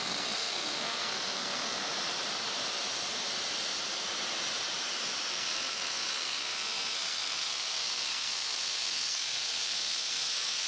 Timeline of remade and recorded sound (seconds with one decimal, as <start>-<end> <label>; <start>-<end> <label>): 0.0-1.8 remade; 1.8-5.3 recorded; 5.3-10.7 remade